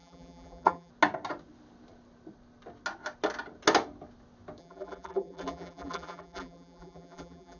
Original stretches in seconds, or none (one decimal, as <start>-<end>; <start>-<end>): 0.9-4.6